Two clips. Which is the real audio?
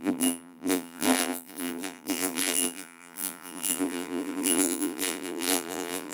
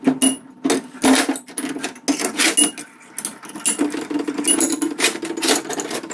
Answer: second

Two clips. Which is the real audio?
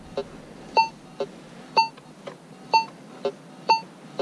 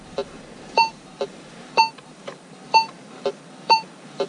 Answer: first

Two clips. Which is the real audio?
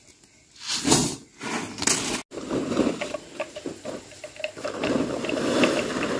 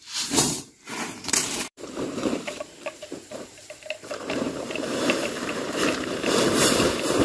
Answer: first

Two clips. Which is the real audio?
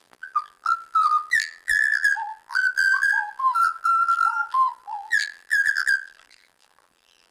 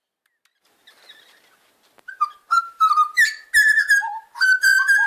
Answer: second